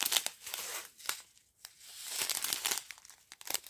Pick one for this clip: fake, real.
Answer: real